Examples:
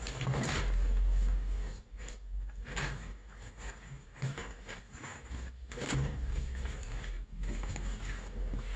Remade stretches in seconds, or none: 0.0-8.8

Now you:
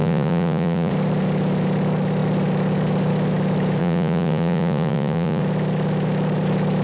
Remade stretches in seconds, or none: 0.0-0.9; 3.8-5.4

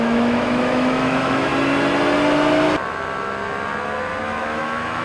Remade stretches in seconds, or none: 0.0-1.5; 4.2-5.0

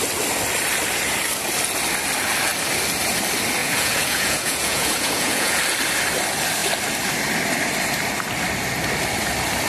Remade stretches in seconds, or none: 3.6-5.6

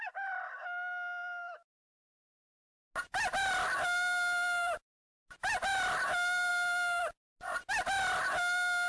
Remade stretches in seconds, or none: none